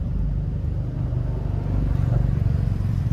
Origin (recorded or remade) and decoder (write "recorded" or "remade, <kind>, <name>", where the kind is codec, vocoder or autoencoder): recorded